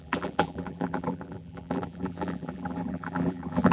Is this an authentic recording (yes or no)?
no